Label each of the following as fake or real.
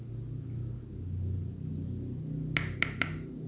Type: real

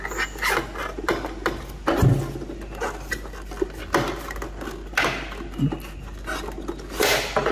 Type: real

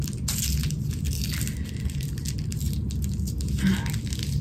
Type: real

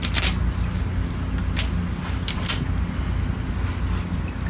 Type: real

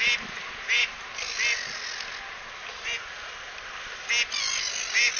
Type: real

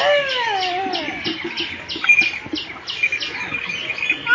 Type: real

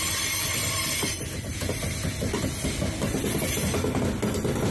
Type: real